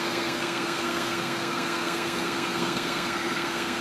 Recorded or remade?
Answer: remade